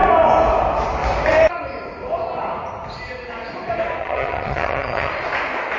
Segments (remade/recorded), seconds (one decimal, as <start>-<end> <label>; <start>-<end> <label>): 0.0-4.0 recorded; 4.0-5.1 remade; 5.1-5.8 recorded

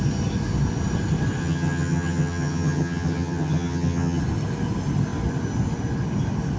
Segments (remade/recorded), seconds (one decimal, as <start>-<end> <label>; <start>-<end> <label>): 0.0-1.4 recorded; 1.4-4.2 remade; 4.2-6.6 recorded

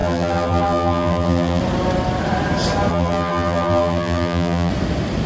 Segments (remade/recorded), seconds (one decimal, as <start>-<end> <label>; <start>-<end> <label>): 0.0-1.6 remade; 1.6-2.9 recorded; 2.9-4.7 remade; 4.7-5.3 recorded

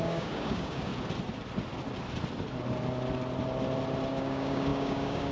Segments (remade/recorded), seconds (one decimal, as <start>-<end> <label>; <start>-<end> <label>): 0.0-0.9 remade; 0.9-4.1 recorded; 4.1-5.3 remade

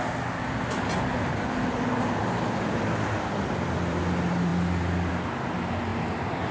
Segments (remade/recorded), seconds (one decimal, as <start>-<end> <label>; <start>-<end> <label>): 0.0-2.2 recorded; 2.2-4.0 remade; 4.0-5.9 recorded; 5.9-6.5 remade

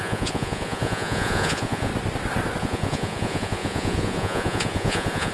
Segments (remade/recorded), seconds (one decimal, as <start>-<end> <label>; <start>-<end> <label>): 0.0-1.9 remade; 1.9-2.6 recorded; 2.6-5.3 remade